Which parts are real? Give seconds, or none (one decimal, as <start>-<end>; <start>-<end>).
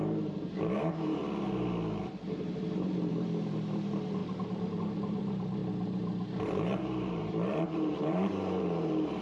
1.2-2.4